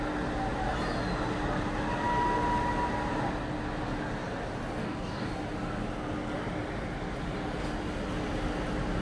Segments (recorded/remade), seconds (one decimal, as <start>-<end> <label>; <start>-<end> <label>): 0.0-4.8 recorded; 4.8-5.3 remade; 5.3-9.0 recorded